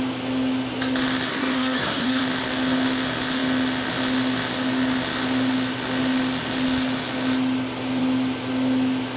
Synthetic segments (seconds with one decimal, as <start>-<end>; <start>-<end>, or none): 1.3-2.2